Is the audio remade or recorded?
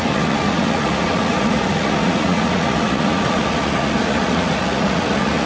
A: remade